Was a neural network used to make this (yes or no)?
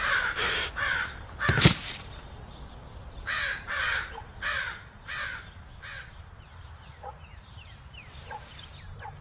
yes